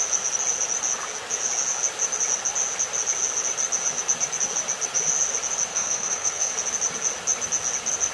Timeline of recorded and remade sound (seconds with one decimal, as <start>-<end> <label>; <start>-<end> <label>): 0.0-5.7 recorded; 5.7-6.5 remade; 6.5-8.1 recorded